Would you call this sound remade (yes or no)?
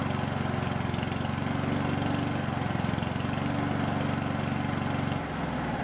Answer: no